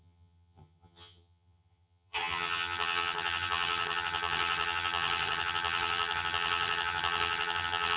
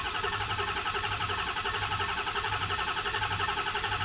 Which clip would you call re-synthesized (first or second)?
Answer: first